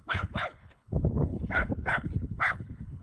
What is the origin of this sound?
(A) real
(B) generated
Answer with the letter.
B